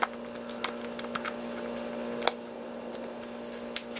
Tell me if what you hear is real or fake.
real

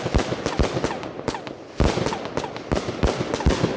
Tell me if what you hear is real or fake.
real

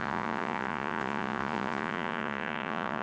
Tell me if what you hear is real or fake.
fake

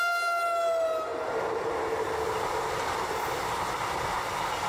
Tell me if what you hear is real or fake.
real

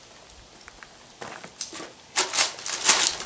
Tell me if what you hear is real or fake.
real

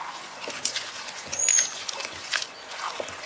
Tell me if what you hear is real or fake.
fake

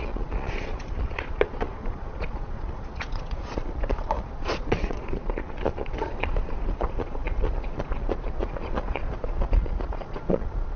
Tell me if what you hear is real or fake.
fake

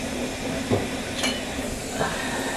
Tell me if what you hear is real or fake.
real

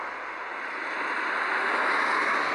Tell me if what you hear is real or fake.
real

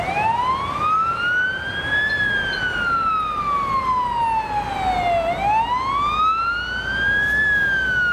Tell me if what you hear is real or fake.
real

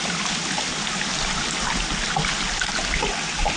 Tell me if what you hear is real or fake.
real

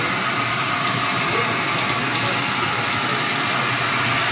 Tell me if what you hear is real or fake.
real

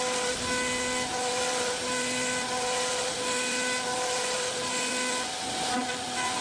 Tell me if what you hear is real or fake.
real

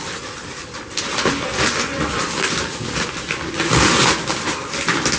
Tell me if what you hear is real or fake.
real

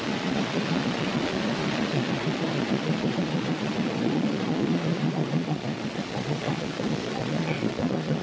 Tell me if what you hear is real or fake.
fake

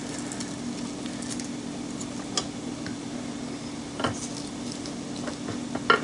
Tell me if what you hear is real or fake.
real